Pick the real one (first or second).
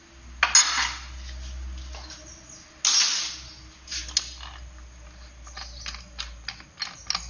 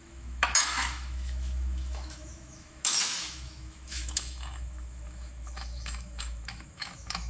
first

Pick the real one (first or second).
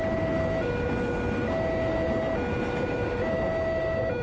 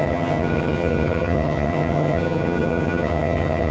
first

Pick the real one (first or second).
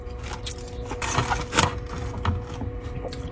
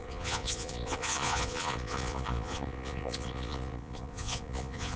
first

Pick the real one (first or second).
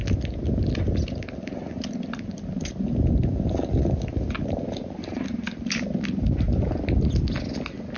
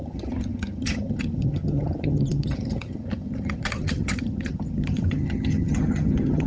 first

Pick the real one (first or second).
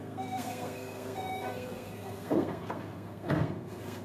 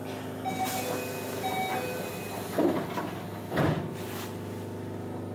second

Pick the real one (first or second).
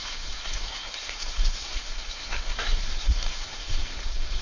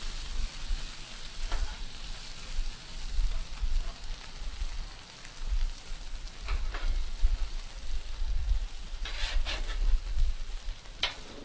second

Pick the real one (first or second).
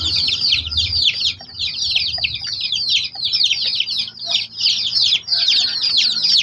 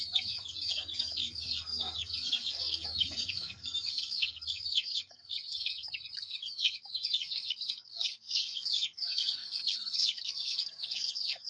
first